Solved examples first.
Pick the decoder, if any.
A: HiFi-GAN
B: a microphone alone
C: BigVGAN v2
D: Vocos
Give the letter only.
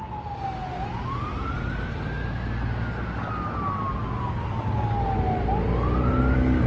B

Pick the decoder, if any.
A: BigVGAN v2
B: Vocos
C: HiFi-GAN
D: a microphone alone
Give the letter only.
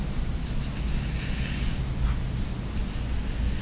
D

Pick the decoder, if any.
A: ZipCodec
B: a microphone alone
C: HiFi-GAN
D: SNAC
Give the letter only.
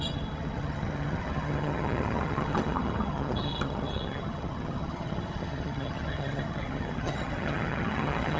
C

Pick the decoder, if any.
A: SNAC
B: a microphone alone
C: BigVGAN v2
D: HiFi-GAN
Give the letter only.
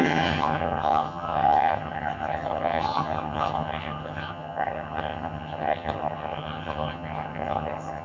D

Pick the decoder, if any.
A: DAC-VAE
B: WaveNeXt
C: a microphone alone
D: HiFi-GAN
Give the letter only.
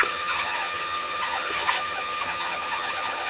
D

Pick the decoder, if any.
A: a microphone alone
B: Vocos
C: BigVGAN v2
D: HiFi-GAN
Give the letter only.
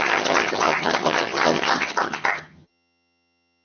D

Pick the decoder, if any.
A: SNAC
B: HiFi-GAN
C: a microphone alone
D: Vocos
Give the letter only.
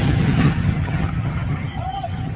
B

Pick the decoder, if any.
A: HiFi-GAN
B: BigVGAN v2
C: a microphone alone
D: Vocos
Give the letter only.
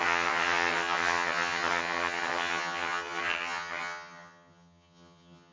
A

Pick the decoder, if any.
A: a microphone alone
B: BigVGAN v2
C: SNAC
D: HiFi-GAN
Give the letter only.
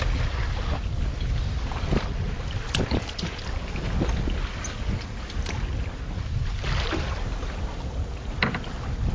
A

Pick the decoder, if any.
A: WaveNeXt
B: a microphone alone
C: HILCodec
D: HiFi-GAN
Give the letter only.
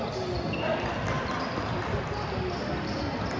B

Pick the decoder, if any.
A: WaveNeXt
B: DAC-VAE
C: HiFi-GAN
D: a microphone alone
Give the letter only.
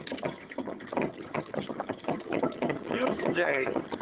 C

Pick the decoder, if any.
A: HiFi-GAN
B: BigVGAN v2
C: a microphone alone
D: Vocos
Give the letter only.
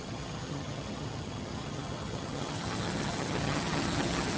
A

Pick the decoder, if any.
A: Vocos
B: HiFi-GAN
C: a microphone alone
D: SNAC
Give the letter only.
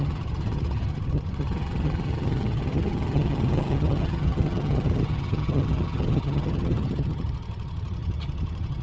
B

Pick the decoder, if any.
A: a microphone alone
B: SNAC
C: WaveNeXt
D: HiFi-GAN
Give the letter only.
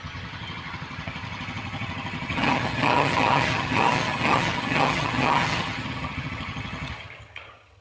D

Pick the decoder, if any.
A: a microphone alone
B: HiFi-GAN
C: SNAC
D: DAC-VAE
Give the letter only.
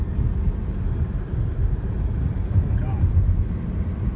A